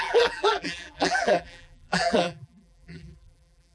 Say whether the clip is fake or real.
fake